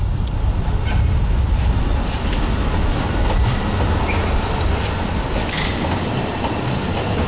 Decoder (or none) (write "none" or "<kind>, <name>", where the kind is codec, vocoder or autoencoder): none